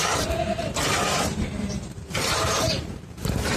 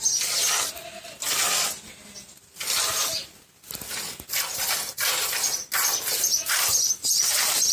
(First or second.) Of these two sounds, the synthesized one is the first